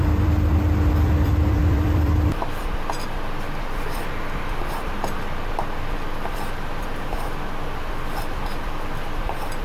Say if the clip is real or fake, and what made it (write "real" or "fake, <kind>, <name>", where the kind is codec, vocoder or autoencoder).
fake, vocoder, BigVGAN v2